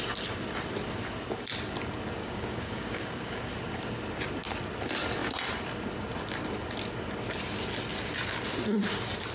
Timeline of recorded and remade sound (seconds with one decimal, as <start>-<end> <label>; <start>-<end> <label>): 0.0-2.2 recorded; 2.2-3.5 remade; 3.5-9.3 recorded